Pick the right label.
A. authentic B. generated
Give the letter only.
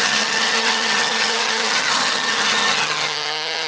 B